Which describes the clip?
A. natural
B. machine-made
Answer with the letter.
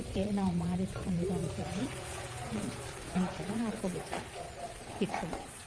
B